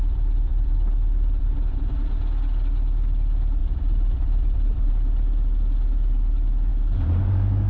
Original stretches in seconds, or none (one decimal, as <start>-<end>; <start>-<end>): 2.2-3.6; 4.9-7.7